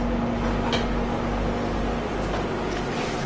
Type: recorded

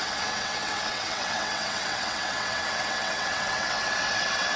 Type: remade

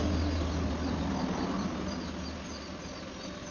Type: recorded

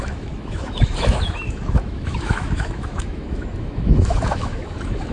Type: remade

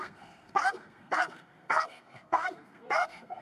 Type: remade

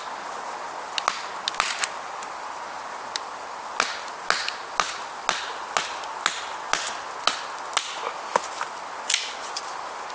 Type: recorded